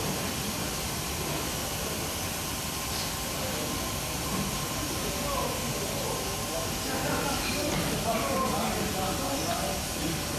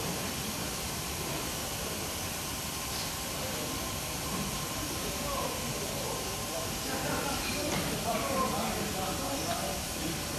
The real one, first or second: first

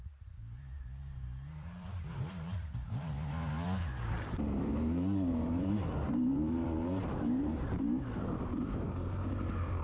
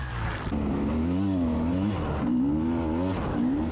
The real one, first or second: second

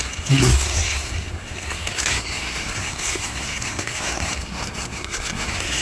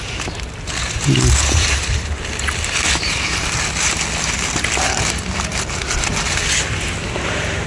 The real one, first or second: second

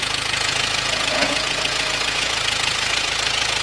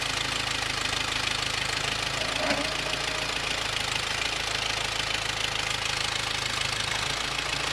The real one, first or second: second